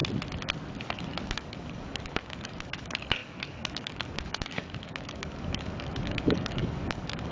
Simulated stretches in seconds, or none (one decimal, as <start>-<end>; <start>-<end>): 0.8-7.3